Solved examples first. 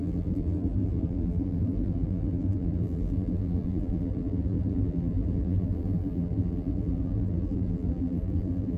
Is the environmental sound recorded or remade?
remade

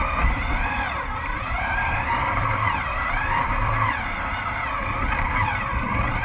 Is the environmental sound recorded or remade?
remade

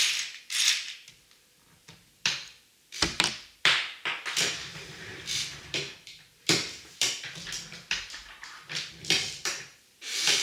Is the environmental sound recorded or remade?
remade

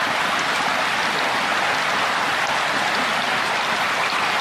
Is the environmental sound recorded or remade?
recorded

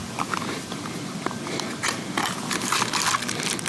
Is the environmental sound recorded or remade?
recorded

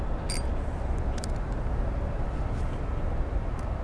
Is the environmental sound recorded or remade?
recorded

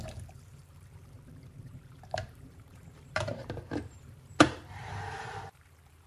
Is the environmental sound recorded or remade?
remade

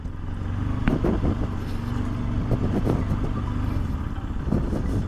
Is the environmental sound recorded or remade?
recorded